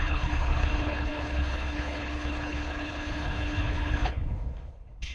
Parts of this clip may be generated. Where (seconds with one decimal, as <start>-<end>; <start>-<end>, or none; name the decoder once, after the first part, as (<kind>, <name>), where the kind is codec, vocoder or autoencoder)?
0.0-5.1 (codec, HILCodec)

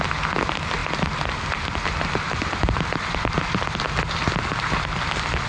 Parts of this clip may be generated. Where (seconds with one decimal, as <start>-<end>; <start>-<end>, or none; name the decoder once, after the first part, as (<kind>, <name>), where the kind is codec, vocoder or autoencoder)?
none

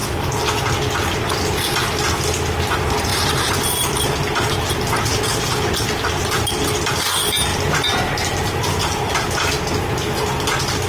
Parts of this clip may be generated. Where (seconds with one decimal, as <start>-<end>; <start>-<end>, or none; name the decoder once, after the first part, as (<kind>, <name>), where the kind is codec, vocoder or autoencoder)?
3.1-6.5 (vocoder, BigVGAN v2); 7.5-9.3

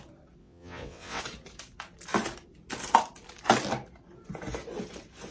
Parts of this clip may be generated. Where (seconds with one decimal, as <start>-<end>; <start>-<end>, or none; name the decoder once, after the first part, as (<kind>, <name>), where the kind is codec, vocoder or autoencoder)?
0.4-1.2 (vocoder, WaveNeXt)